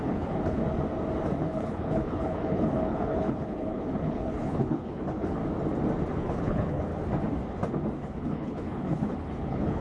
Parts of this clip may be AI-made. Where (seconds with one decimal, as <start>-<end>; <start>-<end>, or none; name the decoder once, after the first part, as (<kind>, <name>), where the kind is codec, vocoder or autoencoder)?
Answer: 0.0-0.6 (codec, HILCodec); 1.4-5.4; 6.1-6.9; 8.0-9.8